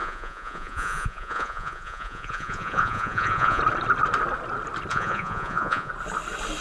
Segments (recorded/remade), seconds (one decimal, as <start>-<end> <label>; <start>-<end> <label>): 0.0-3.6 remade; 3.6-4.9 recorded; 4.9-5.9 remade; 5.9-6.6 recorded